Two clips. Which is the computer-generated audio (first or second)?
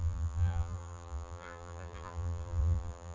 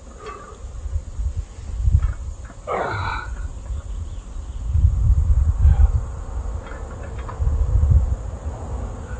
first